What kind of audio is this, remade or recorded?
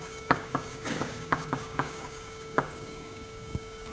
remade